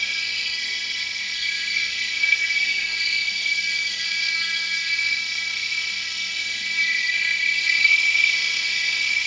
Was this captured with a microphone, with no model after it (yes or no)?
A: no